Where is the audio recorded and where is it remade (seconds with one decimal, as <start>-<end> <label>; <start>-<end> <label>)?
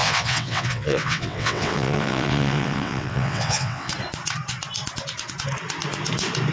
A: 0.0-3.9 remade; 3.9-6.5 recorded